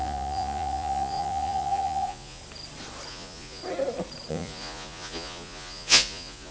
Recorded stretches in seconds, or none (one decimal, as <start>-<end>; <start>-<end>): 2.4-3.1; 3.6-4.3